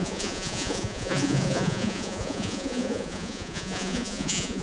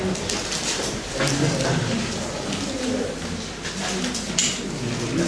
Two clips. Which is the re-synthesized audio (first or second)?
first